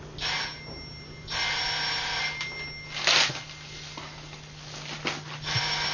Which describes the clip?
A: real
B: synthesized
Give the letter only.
A